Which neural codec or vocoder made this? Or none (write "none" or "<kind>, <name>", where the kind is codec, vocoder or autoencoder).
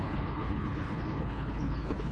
codec, HILCodec